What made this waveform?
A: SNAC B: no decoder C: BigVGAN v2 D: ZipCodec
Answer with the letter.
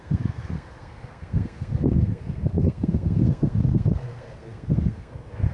A